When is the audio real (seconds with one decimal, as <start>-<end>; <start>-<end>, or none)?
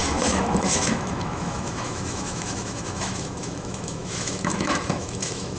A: none